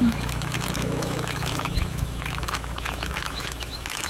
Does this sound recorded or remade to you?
remade